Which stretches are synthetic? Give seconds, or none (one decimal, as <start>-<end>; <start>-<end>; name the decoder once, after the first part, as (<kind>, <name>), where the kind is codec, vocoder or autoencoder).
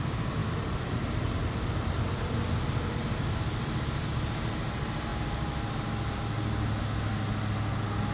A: 0.4-3.8 (vocoder, BigVGAN v2)